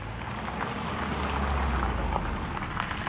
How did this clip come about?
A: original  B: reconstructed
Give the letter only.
A